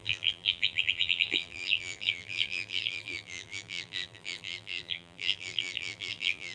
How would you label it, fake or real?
fake